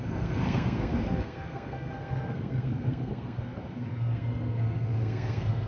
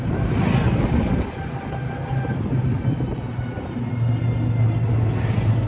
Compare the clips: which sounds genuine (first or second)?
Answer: second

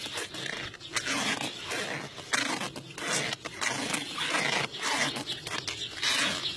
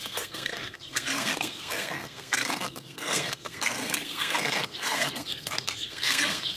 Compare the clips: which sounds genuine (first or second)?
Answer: first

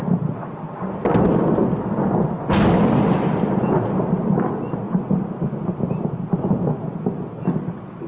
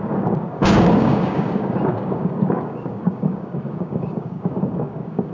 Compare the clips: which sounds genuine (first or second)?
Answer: first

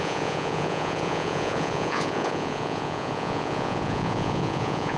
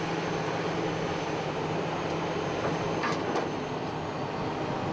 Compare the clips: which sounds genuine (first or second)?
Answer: second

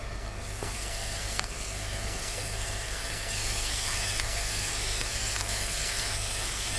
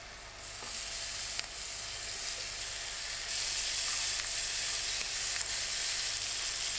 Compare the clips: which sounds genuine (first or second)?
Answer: second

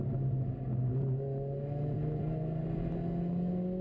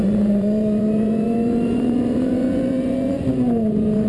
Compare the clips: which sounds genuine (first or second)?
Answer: first